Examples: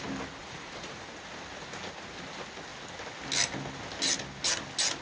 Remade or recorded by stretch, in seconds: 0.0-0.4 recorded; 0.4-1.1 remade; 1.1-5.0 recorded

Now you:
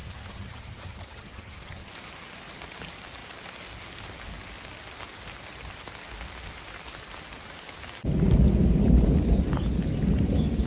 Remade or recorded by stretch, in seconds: 0.0-1.9 remade; 1.9-10.7 recorded

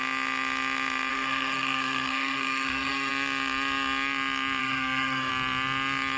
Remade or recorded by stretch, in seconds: 0.0-1.1 recorded; 1.1-3.1 remade; 3.1-4.6 recorded; 4.6-5.3 remade; 5.3-6.2 recorded

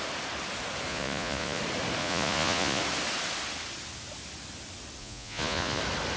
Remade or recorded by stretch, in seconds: 0.0-0.9 recorded; 0.9-1.6 remade; 1.6-2.0 recorded; 2.0-2.8 remade; 2.8-5.0 recorded; 5.0-5.8 remade; 5.8-6.2 recorded

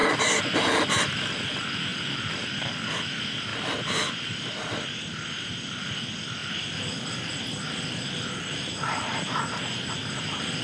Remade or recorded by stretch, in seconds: 0.0-10.6 recorded